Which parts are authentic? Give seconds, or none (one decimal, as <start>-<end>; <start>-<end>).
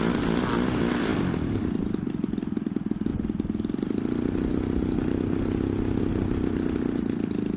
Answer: 0.0-7.6